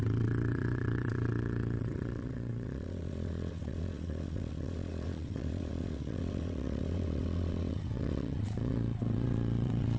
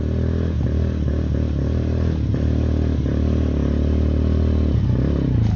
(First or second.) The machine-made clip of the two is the first